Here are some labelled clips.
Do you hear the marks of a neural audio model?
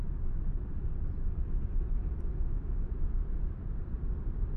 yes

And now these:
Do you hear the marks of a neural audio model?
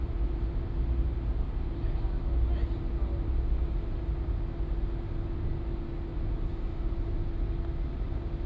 no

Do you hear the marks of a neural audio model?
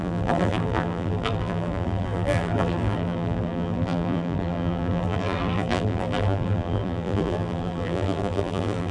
yes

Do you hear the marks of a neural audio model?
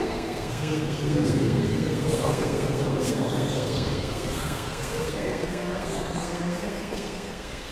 yes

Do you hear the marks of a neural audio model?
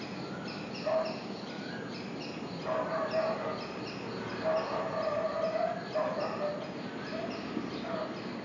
no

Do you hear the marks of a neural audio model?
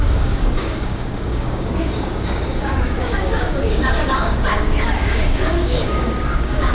yes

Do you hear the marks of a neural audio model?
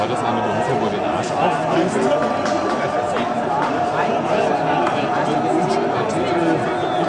no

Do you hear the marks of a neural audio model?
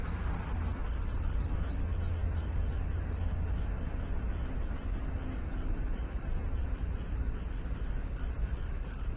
no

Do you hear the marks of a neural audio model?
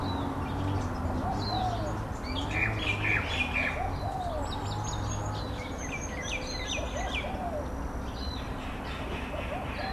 no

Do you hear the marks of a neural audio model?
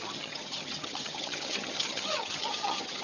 yes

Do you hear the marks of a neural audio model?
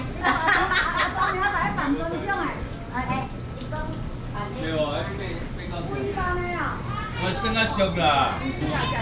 no